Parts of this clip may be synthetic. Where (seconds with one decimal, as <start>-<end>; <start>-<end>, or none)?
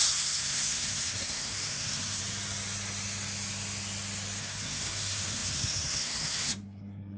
0.0-2.2; 4.4-7.2